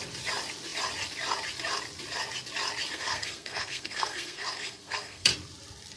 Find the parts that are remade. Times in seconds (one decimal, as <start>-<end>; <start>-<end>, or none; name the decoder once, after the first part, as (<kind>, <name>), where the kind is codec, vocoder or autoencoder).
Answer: 2.9-5.3 (codec, SNAC)